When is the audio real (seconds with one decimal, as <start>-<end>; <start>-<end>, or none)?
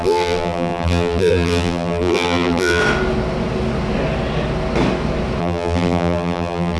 2.8-5.4